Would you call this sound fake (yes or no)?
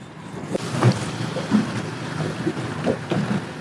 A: no